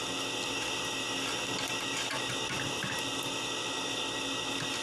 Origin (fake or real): real